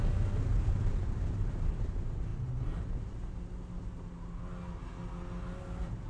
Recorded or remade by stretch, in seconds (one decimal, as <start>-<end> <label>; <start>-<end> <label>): 0.0-0.5 recorded; 0.5-1.0 remade; 1.0-6.1 recorded